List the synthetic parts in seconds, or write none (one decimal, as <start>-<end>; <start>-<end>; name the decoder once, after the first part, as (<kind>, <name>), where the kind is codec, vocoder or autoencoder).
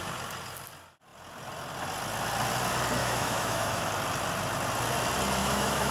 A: 3.0-3.9 (autoencoder, DAC-VAE); 5.4-5.9